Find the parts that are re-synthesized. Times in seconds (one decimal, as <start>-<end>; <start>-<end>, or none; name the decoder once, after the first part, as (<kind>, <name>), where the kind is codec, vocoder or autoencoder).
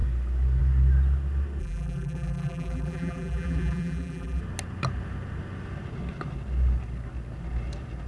1.6-4.4 (vocoder, BigVGAN v2)